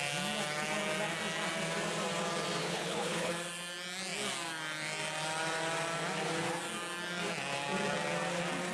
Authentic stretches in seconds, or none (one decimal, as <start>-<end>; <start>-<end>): 0.0-2.6; 3.3-8.7